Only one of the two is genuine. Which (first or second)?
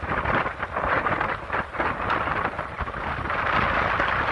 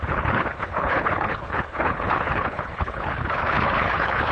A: first